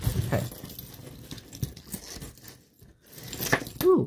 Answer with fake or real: real